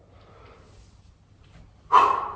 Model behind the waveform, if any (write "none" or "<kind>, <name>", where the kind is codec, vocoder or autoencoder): none